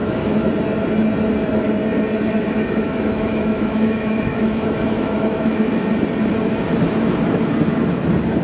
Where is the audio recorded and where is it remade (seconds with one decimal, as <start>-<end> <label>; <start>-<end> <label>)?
0.0-0.5 remade; 0.5-2.4 recorded; 2.4-5.8 remade; 5.8-8.4 recorded